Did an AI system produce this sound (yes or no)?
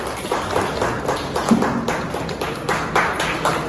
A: no